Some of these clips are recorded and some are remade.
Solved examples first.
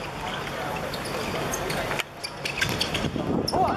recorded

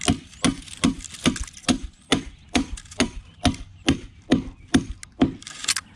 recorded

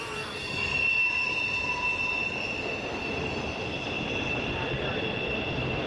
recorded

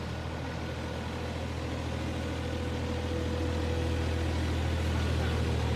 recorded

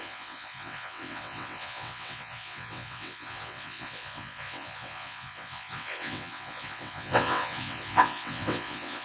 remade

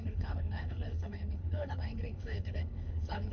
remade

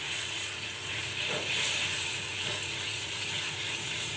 remade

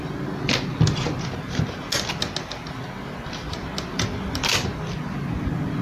recorded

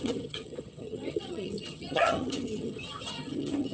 remade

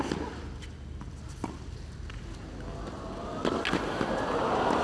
recorded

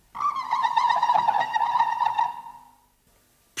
recorded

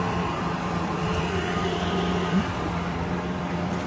remade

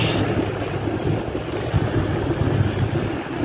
recorded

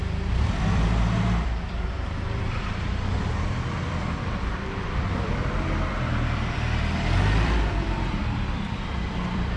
remade